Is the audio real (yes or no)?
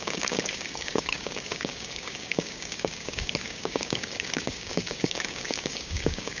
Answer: no